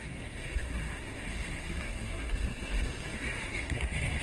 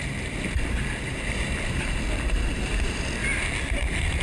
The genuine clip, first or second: second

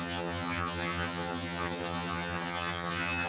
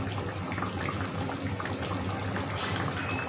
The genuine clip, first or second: second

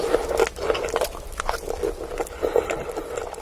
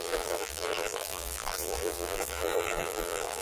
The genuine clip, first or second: first